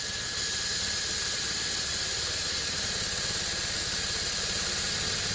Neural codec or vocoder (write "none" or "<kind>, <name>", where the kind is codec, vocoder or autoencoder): none